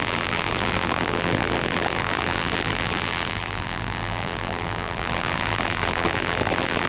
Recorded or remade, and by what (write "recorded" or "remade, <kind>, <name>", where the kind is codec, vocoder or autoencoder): remade, vocoder, BigVGAN v2